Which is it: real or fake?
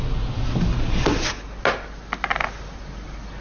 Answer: real